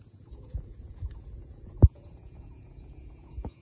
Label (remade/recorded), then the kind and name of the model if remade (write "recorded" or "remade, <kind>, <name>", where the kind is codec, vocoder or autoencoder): remade, vocoder, Vocos